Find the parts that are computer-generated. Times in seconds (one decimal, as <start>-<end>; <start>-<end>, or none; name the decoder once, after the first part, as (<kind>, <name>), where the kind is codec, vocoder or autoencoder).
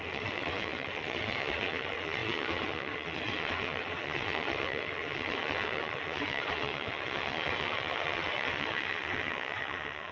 0.0-10.1 (vocoder, WaveNeXt)